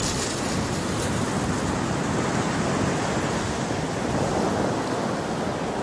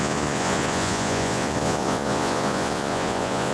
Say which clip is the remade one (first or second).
second